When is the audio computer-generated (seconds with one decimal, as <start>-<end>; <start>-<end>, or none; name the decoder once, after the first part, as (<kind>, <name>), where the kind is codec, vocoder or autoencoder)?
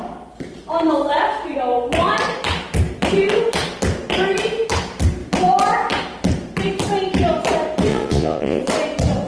7.9-8.6 (vocoder, Vocos)